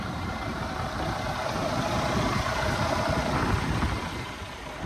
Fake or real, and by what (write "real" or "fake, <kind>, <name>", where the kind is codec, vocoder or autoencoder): real